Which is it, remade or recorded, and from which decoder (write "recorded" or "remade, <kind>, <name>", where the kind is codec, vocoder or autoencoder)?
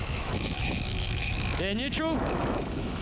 remade, autoencoder, DAC-VAE